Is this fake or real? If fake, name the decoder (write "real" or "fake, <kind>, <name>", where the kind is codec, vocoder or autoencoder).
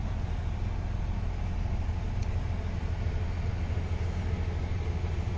real